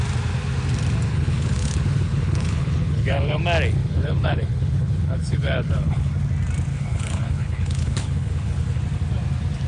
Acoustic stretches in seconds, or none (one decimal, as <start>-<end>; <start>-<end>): 0.0-1.1; 3.4-3.8; 6.1-6.7; 8.8-9.7